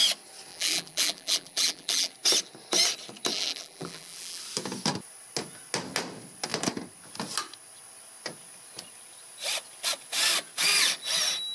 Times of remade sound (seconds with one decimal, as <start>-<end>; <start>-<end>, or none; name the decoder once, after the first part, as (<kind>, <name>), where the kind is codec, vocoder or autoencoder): 0.5-2.1 (vocoder, BigVGAN v2); 3.3-4.4